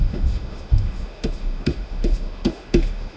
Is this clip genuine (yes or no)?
no